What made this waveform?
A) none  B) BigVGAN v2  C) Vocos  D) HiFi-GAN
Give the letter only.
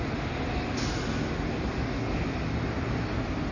A